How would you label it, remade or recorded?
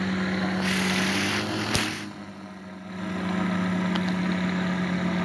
recorded